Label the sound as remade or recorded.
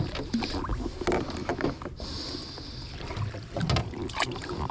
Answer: recorded